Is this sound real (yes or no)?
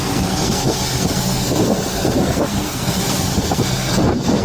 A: no